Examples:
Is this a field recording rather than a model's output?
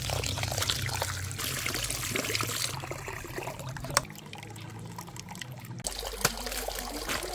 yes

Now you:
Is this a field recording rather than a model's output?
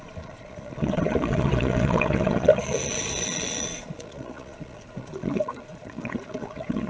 no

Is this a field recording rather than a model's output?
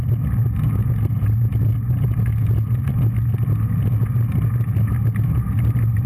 yes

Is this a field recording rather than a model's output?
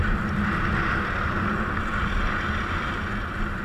yes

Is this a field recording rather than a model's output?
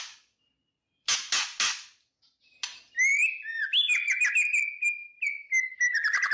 yes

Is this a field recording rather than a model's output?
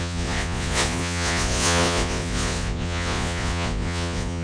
no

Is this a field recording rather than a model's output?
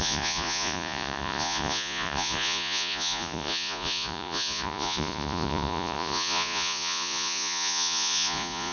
no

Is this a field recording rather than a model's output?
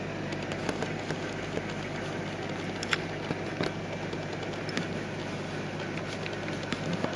yes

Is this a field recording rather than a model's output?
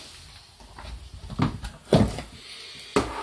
yes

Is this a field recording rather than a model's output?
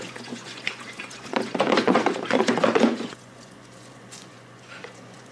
no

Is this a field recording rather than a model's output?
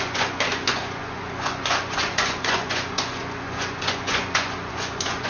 no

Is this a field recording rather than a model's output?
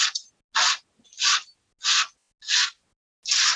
yes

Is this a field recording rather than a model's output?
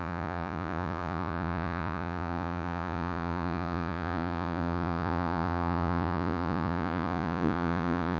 no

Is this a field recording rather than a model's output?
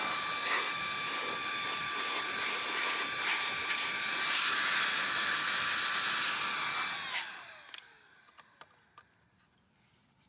yes